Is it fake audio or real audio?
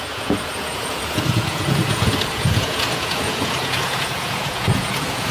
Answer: fake